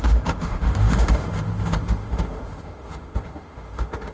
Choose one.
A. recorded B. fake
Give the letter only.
B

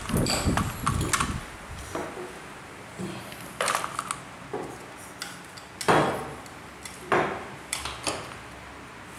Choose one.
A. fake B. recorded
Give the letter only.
B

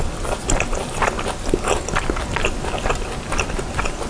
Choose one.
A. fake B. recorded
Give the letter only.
B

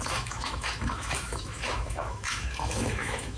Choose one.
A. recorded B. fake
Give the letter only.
B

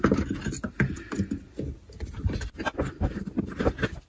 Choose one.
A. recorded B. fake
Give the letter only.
A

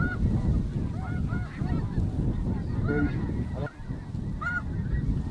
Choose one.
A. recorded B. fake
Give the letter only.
A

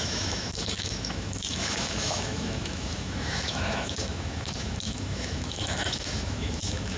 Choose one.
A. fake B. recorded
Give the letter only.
A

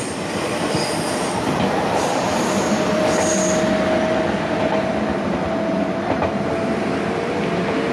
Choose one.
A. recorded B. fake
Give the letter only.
A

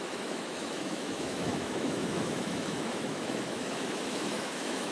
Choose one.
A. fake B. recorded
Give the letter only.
A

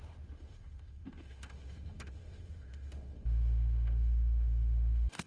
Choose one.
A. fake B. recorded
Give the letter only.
A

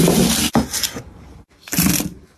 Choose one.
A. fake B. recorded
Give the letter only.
B